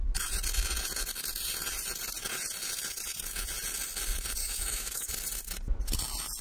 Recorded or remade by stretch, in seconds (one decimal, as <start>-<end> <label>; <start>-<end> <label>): 0.0-4.4 recorded; 4.4-5.1 remade; 5.1-6.4 recorded

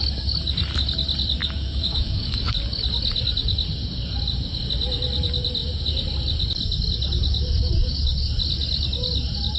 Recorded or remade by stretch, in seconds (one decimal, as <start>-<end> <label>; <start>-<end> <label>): 0.0-1.4 recorded; 1.4-2.5 remade; 2.5-9.6 recorded

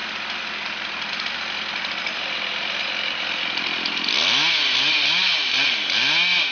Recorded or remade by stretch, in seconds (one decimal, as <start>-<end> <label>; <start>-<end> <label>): 0.0-6.5 recorded

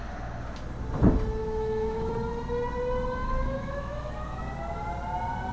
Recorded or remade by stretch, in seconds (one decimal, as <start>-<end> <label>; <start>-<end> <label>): 0.0-1.4 recorded; 1.4-2.1 remade; 2.1-3.2 recorded; 3.2-4.4 remade; 4.4-5.5 recorded

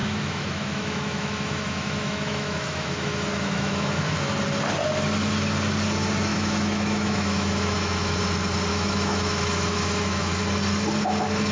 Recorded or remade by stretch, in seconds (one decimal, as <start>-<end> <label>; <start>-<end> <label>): 0.0-4.1 remade; 4.1-6.3 recorded; 6.3-8.2 remade; 8.2-8.7 recorded; 8.7-10.4 remade; 10.4-11.5 recorded

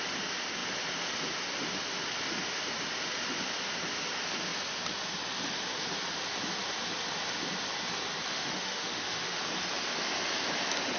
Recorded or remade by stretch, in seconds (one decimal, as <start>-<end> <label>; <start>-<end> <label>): 0.0-8.3 recorded; 8.3-9.4 remade; 9.4-11.0 recorded

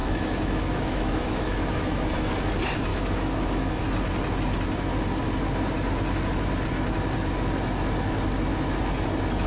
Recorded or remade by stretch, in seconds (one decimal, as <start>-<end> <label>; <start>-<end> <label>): 0.0-2.3 remade; 2.3-2.9 recorded; 2.9-3.8 remade; 3.8-9.5 recorded